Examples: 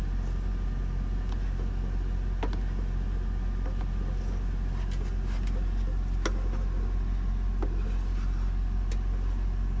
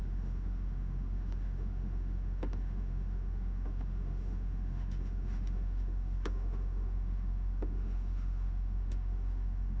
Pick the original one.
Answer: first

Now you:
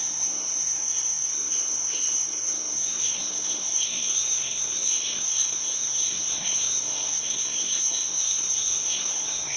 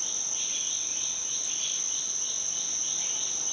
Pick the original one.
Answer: second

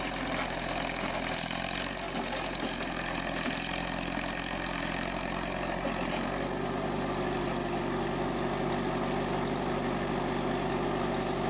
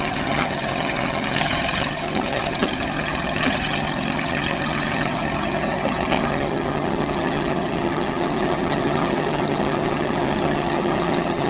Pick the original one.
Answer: first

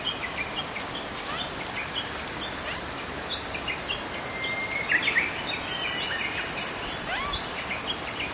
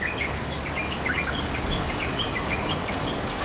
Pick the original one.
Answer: first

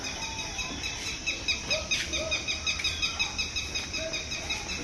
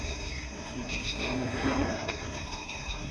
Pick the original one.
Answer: first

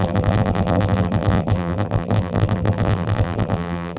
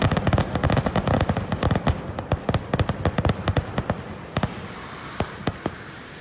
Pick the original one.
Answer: second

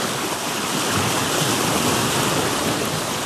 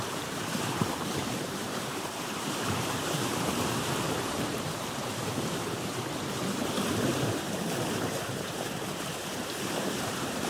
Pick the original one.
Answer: first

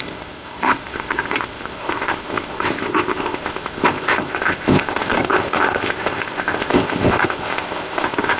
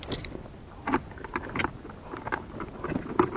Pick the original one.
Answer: second